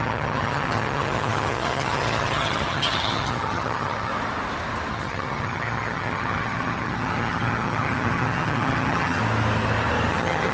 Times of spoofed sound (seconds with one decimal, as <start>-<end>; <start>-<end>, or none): 0.0-4.1; 4.9-9.2; 10.1-10.5